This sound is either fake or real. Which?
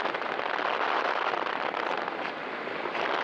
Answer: real